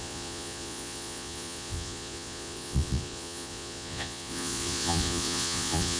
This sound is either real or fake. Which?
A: fake